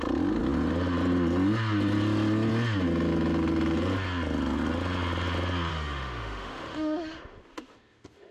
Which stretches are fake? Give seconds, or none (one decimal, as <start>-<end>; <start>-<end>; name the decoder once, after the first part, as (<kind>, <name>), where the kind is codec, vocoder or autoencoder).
5.7-8.3 (autoencoder, DAC-VAE)